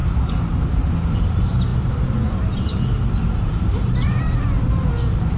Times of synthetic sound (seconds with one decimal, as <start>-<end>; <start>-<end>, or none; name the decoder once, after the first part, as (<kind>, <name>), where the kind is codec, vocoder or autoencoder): none

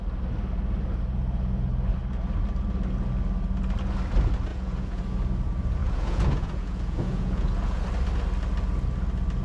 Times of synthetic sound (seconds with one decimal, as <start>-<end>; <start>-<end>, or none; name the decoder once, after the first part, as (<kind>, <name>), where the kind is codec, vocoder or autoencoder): 4.5-5.0 (vocoder, Vocos); 5.8-7.8

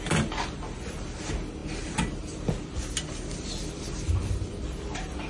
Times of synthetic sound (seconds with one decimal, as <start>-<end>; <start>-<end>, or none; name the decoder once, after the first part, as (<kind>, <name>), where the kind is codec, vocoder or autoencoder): none

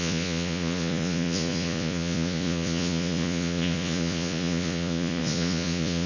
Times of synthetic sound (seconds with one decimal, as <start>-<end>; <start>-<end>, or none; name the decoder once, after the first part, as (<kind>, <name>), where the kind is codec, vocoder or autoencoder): 0.0-6.1 (vocoder, Vocos)